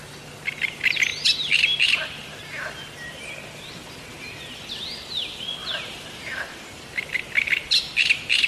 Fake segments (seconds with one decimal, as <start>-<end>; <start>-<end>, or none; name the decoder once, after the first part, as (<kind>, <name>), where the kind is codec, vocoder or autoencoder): 5.6-6.9 (vocoder, BigVGAN v2)